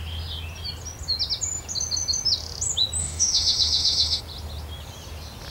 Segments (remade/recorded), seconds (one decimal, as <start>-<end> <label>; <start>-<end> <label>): 0.0-3.0 recorded; 3.0-4.2 remade; 4.2-5.5 recorded